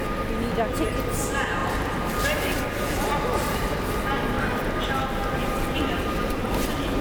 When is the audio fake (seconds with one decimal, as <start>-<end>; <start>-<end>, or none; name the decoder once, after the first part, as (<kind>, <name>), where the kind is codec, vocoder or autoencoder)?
none